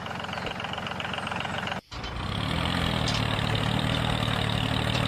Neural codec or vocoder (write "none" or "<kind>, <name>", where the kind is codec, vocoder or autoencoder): vocoder, BigVGAN v2